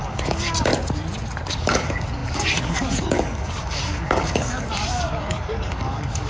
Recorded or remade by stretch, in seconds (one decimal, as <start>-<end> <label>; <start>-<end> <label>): 0.0-0.7 remade; 0.7-1.5 recorded; 1.5-6.3 remade

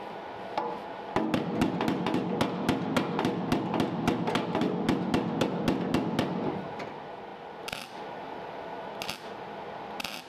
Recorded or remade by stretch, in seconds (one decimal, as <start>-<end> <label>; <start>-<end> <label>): 0.0-10.3 recorded

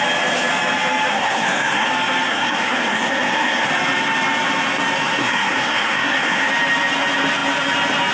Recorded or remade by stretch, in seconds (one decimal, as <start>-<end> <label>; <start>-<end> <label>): 0.0-1.1 recorded; 1.1-1.9 remade; 1.9-2.3 recorded; 2.3-3.7 remade; 3.7-5.2 recorded; 5.2-6.5 remade; 6.5-8.1 recorded

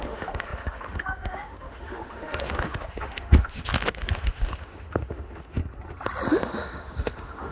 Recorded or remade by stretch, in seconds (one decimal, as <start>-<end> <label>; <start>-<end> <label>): 0.0-5.6 remade; 5.6-6.3 recorded; 6.3-7.5 remade

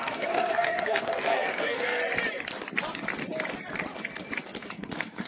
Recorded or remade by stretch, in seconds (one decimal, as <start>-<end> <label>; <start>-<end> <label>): 0.0-2.0 remade; 2.0-4.6 recorded; 4.6-5.3 remade

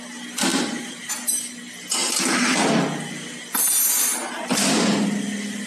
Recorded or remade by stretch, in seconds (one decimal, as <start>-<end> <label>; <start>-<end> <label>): 0.0-0.5 recorded; 0.5-1.1 remade; 1.1-5.7 recorded

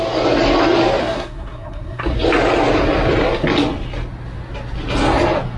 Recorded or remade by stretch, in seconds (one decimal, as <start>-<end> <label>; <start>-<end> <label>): 0.0-1.0 recorded; 1.0-2.0 remade; 2.0-5.6 recorded

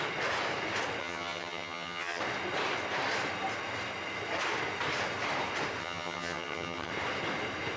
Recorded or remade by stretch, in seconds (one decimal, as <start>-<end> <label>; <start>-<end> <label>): 0.0-1.0 recorded; 1.0-2.2 remade; 2.2-5.8 recorded; 5.8-6.9 remade; 6.9-7.8 recorded